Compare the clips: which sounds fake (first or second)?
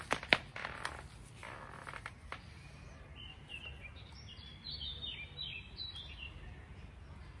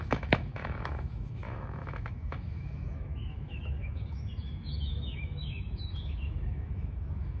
second